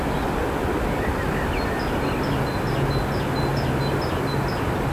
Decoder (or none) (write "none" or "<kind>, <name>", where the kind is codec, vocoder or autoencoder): none